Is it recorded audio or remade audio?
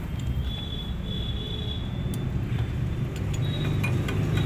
recorded